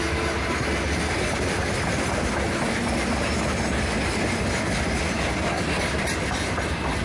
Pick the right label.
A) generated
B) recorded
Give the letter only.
B